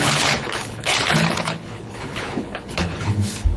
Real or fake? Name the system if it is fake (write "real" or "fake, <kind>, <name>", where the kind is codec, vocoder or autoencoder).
fake, codec, HILCodec